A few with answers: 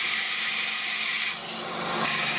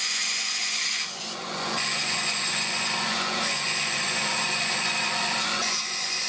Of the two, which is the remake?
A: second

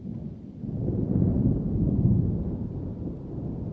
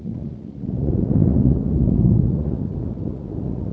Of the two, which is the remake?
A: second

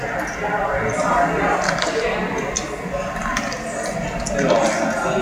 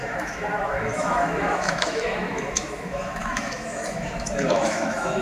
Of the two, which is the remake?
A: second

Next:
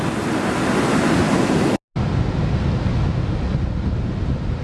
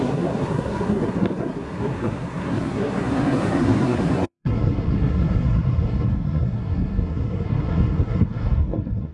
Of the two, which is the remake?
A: second